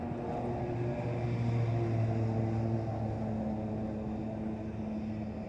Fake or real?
real